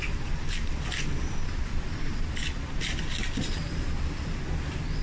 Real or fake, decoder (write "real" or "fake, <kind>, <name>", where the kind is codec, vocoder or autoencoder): real